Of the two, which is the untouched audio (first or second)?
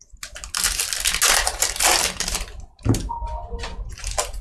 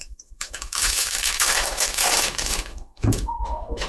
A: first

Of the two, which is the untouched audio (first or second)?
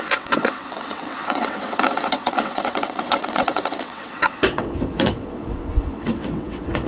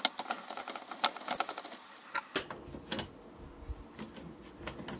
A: second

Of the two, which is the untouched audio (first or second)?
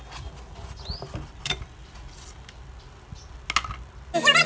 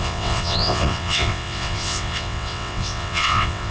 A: first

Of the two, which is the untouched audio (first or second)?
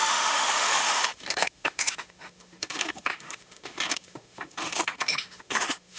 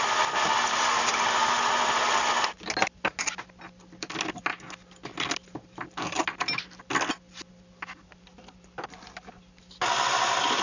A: second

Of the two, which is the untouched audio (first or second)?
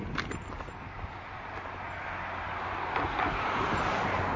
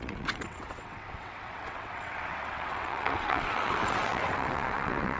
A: first